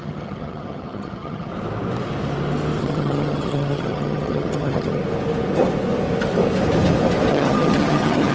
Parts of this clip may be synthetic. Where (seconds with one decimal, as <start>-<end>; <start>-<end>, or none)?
0.0-1.5; 2.8-5.0; 7.3-8.3